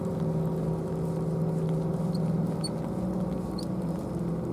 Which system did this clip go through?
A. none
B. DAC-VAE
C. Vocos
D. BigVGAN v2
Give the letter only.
A